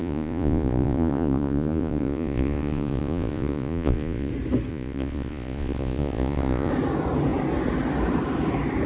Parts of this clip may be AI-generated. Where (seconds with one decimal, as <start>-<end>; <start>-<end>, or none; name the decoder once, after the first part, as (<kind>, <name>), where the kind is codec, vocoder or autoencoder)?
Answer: 0.0-4.3 (vocoder, Vocos); 4.7-6.7

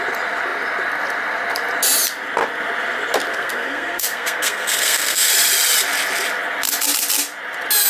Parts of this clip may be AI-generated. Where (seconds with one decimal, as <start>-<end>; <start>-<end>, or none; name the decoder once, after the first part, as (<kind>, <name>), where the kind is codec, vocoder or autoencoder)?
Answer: 3.3-5.3 (codec, SNAC)

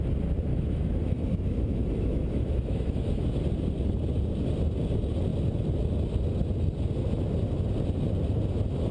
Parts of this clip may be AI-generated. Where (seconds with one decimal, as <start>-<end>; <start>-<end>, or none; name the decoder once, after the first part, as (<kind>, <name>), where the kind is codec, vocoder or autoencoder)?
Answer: 0.5-3.4 (autoencoder, DAC-VAE)

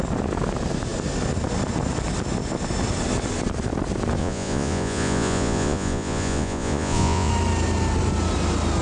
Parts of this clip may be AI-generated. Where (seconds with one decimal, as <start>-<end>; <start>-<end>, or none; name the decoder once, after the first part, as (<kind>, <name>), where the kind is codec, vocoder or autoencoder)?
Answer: 4.2-7.3 (vocoder, Vocos)

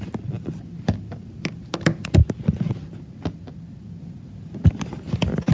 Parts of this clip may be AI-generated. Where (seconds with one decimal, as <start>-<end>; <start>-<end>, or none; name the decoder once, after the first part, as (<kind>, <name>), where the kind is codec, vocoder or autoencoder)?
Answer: none

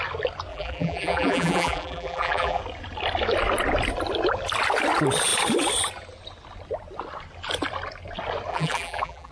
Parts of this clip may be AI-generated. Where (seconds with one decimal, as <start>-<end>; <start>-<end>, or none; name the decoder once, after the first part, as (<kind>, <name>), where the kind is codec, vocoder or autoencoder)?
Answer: 0.5-2.6 (vocoder, BigVGAN v2); 8.5-9.3

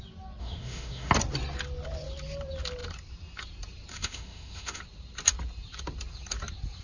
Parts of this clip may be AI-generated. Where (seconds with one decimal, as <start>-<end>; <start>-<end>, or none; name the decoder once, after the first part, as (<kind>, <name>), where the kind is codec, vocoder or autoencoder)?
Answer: 0.4-1.1 (autoencoder, DAC-VAE); 3.9-4.8